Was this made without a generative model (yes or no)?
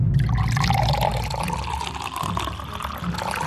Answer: yes